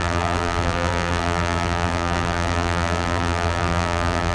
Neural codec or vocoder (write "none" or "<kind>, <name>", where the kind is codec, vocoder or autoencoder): vocoder, BigVGAN v2